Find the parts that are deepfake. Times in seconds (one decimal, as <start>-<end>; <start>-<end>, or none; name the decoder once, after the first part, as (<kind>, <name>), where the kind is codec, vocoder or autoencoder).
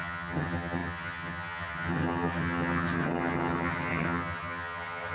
0.0-5.1 (vocoder, HiFi-GAN)